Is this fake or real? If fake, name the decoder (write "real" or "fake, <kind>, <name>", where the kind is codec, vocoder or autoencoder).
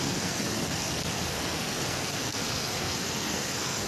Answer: fake, codec, SNAC